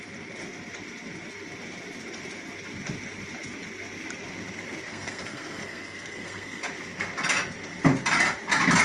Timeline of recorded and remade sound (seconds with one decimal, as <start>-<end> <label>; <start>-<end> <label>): 0.0-4.9 recorded; 4.9-6.6 remade; 6.6-8.8 recorded